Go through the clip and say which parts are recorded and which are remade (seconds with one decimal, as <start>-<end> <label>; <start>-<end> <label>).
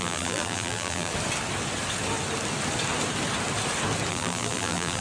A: 0.0-1.1 remade; 1.1-4.1 recorded; 4.1-5.0 remade